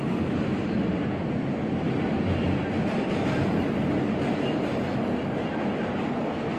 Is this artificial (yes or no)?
no